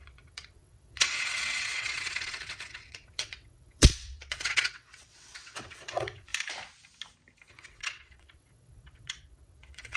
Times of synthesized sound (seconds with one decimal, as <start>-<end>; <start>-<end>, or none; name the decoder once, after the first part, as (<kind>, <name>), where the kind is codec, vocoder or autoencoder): 0.0-6.3 (vocoder, WaveNeXt); 7.5-10.0